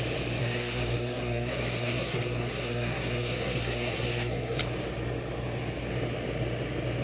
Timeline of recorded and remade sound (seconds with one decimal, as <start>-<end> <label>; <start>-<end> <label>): 0.0-0.4 recorded; 0.4-4.6 remade; 4.6-7.0 recorded